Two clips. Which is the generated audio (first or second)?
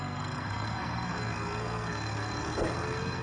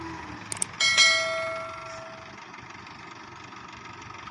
first